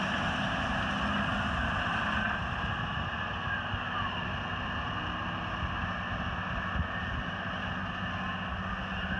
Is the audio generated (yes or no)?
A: no